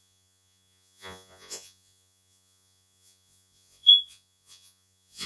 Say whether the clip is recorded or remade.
remade